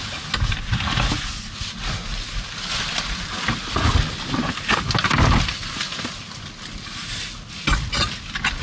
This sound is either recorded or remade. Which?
recorded